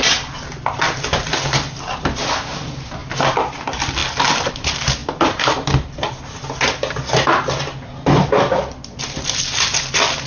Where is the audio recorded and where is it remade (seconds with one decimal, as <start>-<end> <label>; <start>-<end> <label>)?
0.0-10.3 recorded